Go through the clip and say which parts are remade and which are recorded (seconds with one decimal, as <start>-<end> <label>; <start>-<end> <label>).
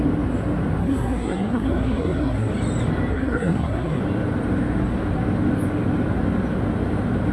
0.0-0.8 recorded; 0.8-2.5 remade; 2.5-3.1 recorded; 3.1-4.0 remade; 4.0-7.3 recorded